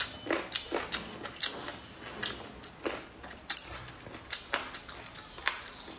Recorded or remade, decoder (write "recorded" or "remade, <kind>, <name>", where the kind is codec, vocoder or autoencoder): recorded